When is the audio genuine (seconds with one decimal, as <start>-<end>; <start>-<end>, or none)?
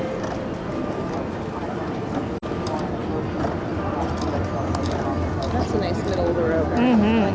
0.0-7.3